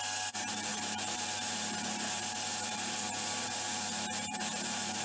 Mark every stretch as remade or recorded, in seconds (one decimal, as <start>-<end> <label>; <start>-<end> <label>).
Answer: 0.0-5.0 recorded